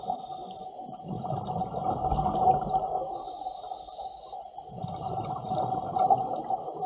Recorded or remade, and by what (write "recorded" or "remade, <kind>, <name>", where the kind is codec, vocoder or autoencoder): recorded